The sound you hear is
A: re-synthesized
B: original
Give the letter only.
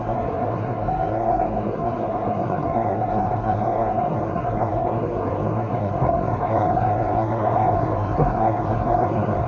A